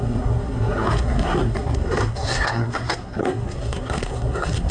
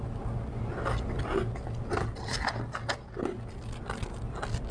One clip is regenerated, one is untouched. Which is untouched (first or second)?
second